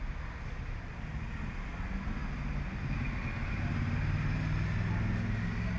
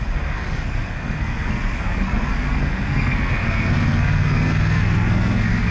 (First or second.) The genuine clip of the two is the first